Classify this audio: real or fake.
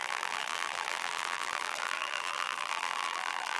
fake